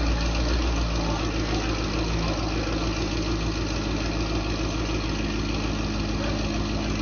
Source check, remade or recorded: recorded